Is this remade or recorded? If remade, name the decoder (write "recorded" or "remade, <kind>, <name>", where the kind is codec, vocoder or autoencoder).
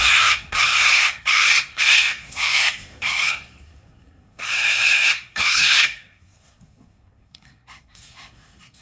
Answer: remade, codec, SNAC